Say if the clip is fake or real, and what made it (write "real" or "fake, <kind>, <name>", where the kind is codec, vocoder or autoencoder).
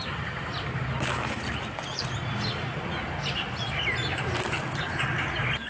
real